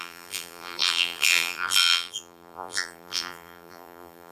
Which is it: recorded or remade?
remade